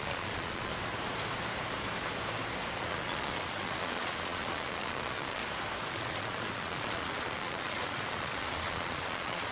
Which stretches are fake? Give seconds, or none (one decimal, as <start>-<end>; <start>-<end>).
0.0-0.7; 2.8-5.4; 5.9-9.5